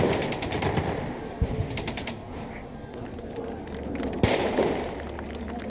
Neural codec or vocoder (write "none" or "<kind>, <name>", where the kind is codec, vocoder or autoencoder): none